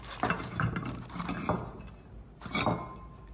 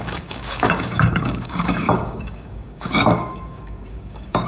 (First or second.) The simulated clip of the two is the second